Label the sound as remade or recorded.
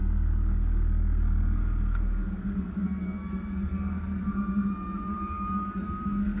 remade